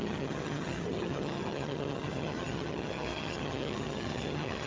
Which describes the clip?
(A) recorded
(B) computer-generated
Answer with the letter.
B